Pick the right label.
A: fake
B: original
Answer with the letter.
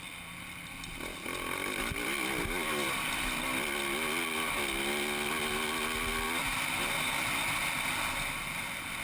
B